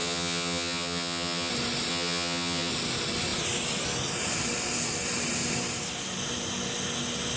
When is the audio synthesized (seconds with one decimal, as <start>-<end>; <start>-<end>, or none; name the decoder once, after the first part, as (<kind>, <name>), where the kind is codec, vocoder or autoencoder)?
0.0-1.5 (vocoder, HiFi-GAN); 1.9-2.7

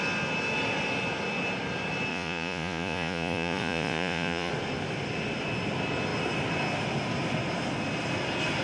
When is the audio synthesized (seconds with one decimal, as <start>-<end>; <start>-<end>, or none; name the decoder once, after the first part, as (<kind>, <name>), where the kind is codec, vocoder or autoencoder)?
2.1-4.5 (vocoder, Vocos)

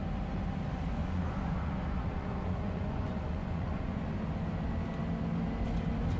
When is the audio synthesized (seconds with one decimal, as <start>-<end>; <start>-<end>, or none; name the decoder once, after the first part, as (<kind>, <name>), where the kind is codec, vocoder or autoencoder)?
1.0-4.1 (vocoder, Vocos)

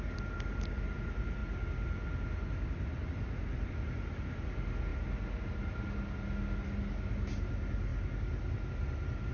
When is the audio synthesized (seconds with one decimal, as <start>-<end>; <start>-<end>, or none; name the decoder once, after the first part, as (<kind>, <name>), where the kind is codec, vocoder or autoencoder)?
none